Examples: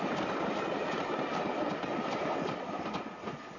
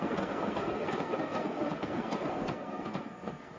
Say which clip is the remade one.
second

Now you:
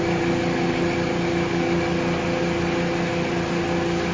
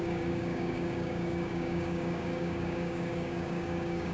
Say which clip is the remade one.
second